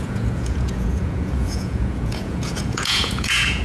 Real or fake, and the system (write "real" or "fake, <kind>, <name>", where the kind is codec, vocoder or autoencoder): fake, vocoder, Vocos